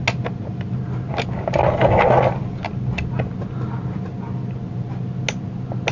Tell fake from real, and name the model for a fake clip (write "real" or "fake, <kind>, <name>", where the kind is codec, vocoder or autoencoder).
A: real